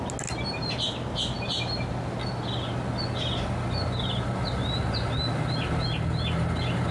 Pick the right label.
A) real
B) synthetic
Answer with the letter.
A